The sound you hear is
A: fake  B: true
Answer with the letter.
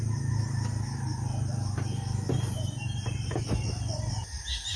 B